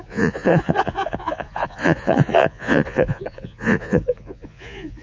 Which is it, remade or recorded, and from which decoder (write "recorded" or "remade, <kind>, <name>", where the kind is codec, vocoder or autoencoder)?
remade, vocoder, Vocos